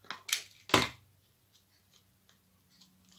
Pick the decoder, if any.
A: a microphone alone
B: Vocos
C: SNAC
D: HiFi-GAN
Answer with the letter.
A